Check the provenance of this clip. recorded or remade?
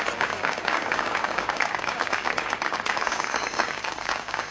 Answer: remade